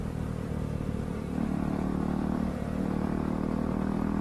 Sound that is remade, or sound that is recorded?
remade